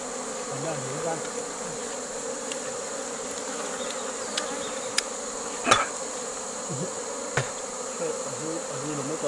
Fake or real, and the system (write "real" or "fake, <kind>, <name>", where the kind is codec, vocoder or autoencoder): real